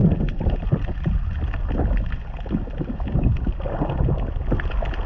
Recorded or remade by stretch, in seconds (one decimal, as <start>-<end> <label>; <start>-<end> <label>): 0.0-5.1 recorded